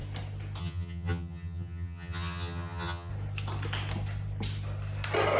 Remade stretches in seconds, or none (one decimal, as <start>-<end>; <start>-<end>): 0.6-3.1